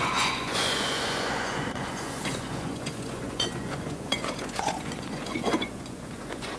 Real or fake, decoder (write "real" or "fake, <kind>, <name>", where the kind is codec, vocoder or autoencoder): fake, vocoder, Vocos